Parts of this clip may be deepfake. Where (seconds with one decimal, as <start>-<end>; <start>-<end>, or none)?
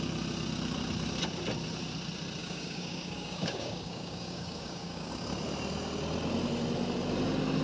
2.4-5.1